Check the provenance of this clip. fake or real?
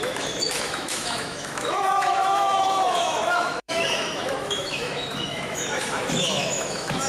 fake